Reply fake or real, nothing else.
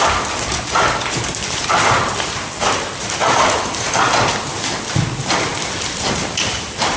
real